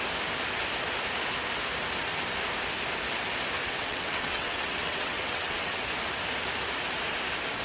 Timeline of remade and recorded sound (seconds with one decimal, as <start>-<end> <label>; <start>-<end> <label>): 0.0-3.6 recorded; 3.6-5.8 remade; 5.8-7.6 recorded